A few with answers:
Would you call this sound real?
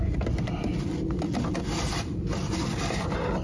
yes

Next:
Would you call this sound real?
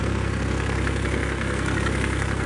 no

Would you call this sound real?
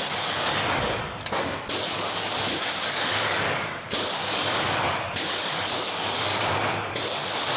no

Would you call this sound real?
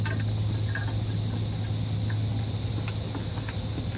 yes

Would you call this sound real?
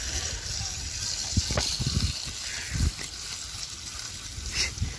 yes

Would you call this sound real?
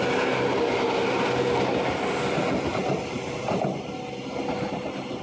yes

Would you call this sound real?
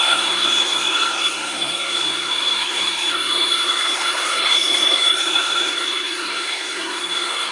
no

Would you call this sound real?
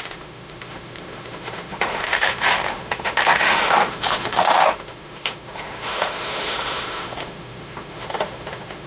no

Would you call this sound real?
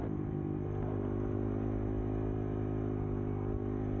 yes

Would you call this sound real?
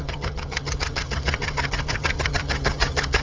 no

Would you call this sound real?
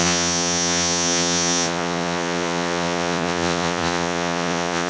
no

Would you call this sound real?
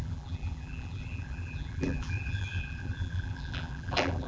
no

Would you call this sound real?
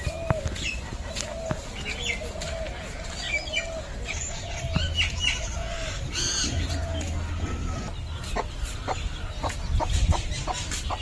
yes